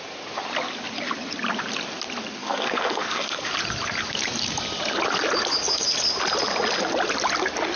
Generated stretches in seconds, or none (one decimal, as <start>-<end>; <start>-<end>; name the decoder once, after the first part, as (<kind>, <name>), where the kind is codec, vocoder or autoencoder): 2.4-3.5 (codec, SNAC)